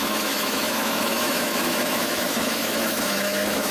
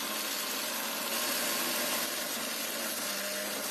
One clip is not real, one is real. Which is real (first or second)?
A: second